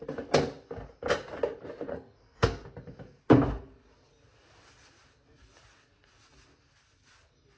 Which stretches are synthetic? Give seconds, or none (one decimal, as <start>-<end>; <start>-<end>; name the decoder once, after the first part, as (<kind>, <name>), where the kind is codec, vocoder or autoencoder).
1.9-2.6 (codec, SNAC)